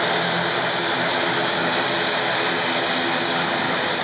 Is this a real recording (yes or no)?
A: yes